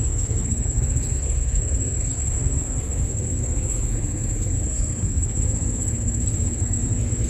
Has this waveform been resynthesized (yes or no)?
yes